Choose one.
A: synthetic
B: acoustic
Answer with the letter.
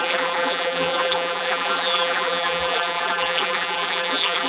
A